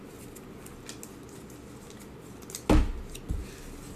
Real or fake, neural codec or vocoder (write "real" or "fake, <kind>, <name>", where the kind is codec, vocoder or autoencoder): real